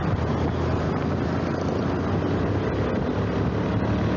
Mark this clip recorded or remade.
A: recorded